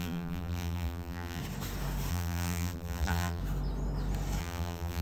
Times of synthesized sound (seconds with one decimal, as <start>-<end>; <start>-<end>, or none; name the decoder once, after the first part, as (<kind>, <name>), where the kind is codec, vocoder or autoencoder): 0.0-1.4 (vocoder, BigVGAN v2); 2.1-3.4; 4.4-5.0